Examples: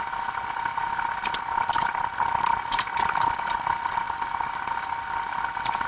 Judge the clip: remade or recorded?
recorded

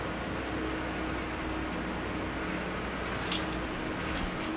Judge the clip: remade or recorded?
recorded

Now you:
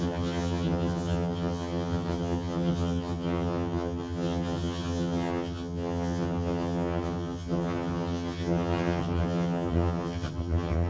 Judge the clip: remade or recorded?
remade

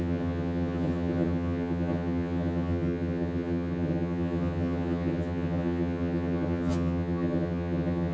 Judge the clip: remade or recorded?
remade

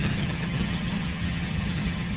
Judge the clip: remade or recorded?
remade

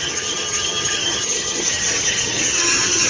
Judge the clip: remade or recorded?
remade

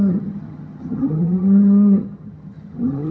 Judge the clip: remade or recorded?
remade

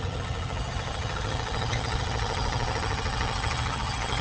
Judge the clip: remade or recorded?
remade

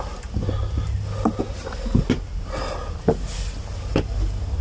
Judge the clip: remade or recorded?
recorded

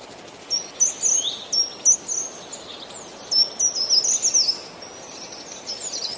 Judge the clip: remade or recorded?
recorded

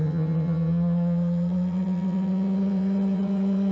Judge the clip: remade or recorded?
remade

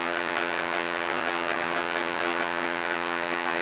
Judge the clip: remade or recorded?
remade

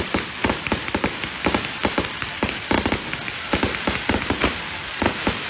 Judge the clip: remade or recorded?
recorded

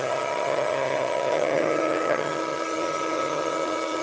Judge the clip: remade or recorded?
remade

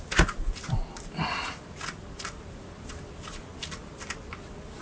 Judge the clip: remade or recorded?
recorded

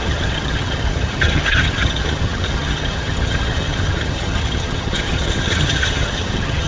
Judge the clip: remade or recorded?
remade